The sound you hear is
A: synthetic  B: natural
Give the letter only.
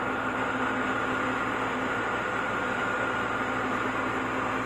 B